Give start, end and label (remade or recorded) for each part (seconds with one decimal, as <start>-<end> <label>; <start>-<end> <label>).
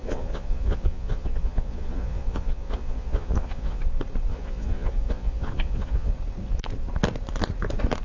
0.0-3.8 remade; 3.8-4.3 recorded; 4.3-6.1 remade; 6.1-8.0 recorded